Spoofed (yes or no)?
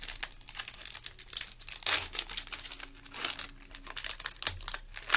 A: no